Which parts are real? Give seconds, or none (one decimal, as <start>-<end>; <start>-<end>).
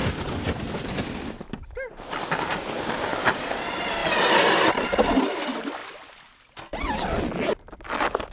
1.2-8.3